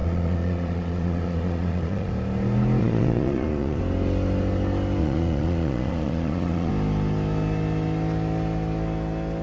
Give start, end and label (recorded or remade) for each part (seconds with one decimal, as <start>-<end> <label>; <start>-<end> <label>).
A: 0.0-2.1 remade; 2.1-2.8 recorded; 2.8-3.8 remade; 3.8-5.0 recorded; 5.0-6.7 remade; 6.7-9.4 recorded